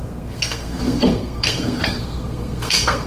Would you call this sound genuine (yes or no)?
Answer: no